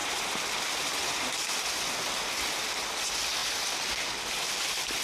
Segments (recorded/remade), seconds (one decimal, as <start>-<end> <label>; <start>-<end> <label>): 0.0-5.0 recorded